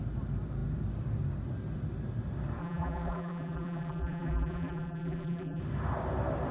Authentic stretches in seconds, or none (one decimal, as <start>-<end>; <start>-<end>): 0.0-2.6; 5.6-6.5